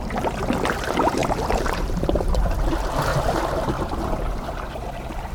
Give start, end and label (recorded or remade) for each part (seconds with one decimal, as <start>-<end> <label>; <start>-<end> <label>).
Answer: 0.0-1.2 recorded; 1.2-2.5 remade; 2.5-3.1 recorded; 3.1-5.3 remade